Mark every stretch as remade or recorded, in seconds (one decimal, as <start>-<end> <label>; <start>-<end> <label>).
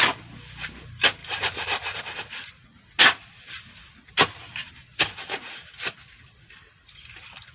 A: 0.0-1.2 recorded; 1.2-2.0 remade; 2.0-4.6 recorded; 4.6-5.6 remade; 5.6-7.5 recorded